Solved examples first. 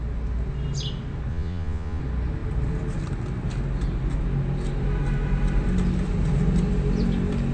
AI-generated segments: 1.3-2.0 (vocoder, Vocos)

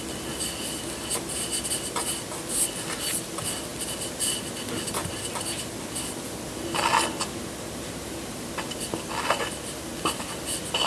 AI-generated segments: none

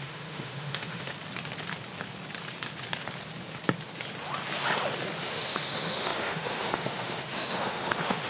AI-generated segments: 0.0-1.1 (autoencoder, DAC-VAE); 5.2-8.3

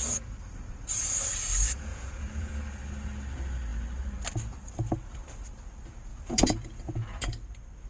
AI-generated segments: 1.9-2.6 (vocoder, Vocos); 6.1-7.3

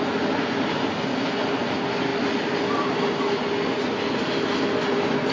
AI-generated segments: none

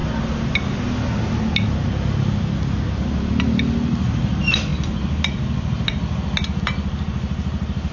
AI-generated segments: none